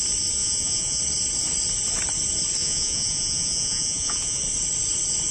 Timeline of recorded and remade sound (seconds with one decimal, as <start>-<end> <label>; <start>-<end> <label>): 0.0-0.4 recorded; 0.4-1.0 remade; 1.0-2.6 recorded; 2.6-4.4 remade; 4.4-5.3 recorded